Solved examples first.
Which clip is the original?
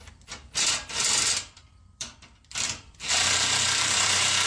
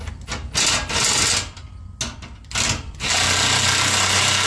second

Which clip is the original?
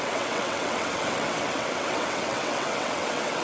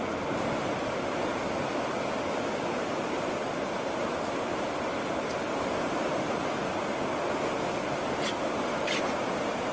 second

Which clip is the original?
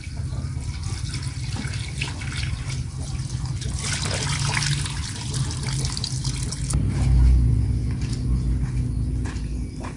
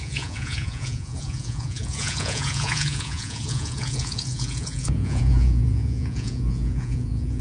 first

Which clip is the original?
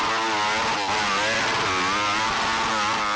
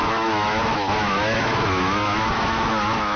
first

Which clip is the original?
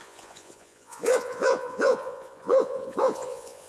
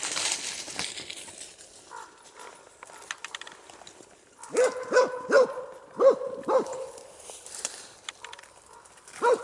second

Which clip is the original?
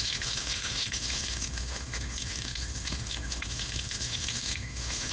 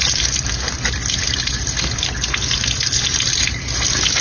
second